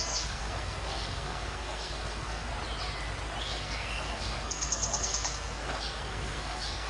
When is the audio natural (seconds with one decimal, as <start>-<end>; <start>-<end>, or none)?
2.5-3.4